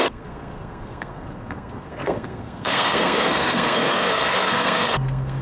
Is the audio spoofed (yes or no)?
yes